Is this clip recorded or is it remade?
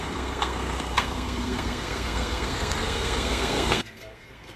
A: remade